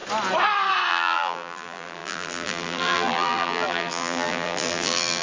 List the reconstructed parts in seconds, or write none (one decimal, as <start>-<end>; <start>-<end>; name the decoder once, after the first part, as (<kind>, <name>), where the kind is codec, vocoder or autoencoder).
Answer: 0.9-5.2 (vocoder, BigVGAN v2)